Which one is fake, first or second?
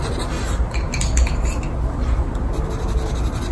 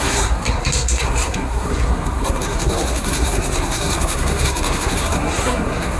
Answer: second